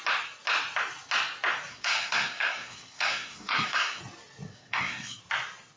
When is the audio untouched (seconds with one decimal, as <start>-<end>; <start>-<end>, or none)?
0.0-1.7; 4.0-4.5; 5.2-5.8

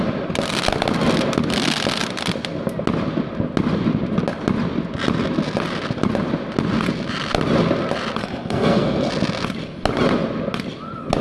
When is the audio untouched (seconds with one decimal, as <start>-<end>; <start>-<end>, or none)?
0.0-8.2; 9.1-11.2

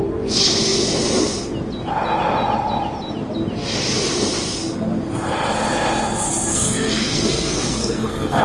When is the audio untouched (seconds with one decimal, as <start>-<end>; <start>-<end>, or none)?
0.0-6.5